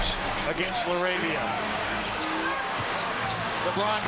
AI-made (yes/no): yes